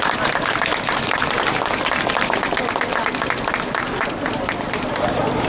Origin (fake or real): real